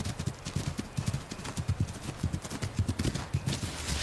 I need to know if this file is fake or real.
real